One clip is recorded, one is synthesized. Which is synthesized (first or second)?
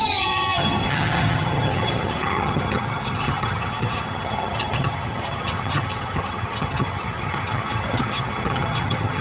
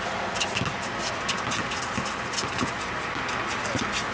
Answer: first